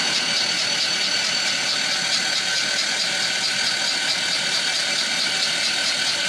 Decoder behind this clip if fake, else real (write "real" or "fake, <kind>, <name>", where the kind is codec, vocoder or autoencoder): real